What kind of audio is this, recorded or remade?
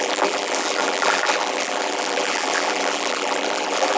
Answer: remade